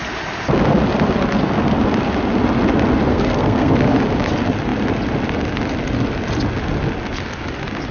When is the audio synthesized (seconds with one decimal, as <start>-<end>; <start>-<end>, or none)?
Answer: 3.1-3.7